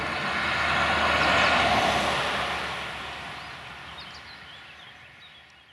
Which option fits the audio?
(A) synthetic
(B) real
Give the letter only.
B